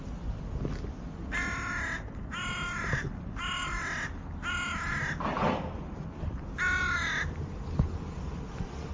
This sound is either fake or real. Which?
real